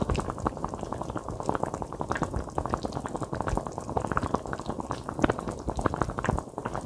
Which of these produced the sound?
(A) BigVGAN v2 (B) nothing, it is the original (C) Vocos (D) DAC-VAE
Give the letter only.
B